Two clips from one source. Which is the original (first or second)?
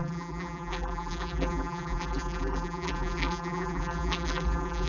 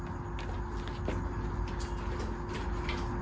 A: second